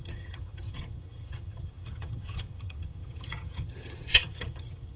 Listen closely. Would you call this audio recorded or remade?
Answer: remade